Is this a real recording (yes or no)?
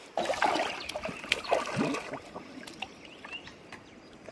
yes